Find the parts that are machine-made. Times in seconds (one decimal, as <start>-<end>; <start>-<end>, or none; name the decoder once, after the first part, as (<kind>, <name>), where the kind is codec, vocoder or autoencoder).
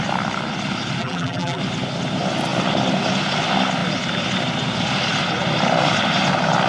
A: 1.0-1.6 (vocoder, BigVGAN v2)